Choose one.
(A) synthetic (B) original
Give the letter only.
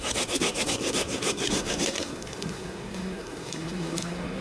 A